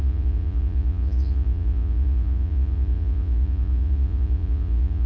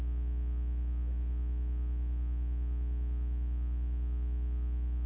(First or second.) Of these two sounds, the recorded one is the second